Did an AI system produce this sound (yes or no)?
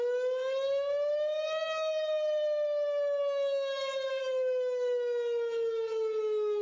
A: yes